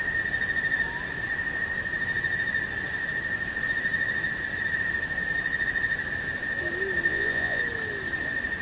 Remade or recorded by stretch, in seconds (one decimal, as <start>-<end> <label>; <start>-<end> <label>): 0.0-7.1 recorded; 7.1-7.6 remade; 7.6-8.6 recorded